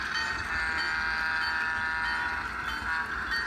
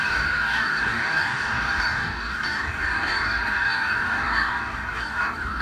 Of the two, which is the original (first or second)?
first